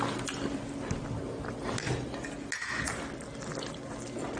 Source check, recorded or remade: recorded